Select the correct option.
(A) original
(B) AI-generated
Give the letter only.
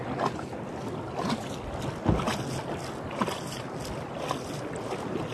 A